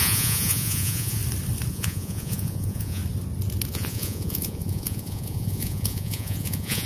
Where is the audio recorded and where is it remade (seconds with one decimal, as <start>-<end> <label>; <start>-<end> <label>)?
0.0-1.2 remade; 1.2-1.7 recorded; 1.7-3.0 remade; 3.0-3.7 recorded; 3.7-6.9 remade